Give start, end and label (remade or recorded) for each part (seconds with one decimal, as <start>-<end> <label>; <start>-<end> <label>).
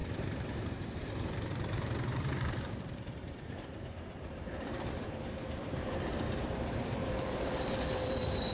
0.0-8.5 remade